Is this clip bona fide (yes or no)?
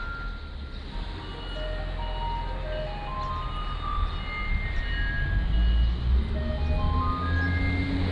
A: yes